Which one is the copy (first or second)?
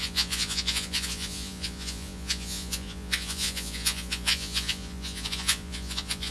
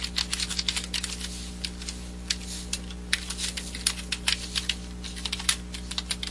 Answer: first